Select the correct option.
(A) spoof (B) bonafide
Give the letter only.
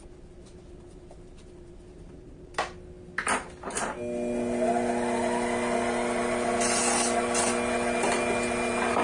B